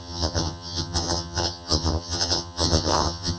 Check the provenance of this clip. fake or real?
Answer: fake